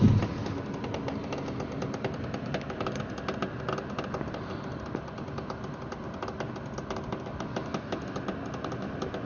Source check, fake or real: real